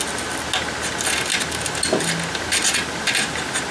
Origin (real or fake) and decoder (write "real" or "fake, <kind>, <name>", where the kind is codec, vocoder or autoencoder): real